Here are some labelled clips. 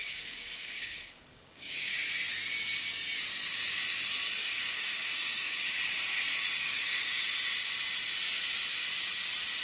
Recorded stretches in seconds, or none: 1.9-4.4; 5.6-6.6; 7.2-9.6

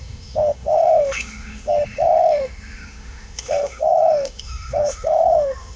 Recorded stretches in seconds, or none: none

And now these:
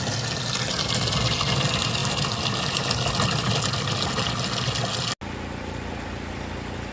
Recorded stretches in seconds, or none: 0.0-6.9